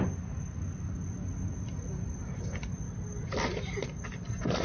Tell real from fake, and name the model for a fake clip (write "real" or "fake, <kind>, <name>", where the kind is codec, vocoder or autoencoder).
real